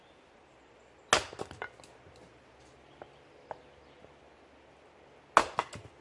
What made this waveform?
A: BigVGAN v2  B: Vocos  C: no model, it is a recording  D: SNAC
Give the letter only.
C